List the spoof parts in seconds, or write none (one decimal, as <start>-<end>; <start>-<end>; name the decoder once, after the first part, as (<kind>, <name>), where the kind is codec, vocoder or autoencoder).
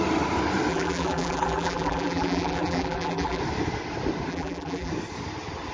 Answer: 0.7-3.4 (vocoder, BigVGAN v2); 4.3-4.9